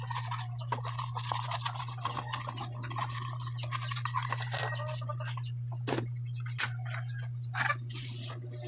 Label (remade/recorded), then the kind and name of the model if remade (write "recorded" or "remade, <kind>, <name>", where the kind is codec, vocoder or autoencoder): recorded